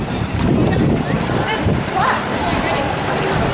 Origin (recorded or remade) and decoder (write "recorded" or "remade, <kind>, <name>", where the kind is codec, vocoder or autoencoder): remade, vocoder, BigVGAN v2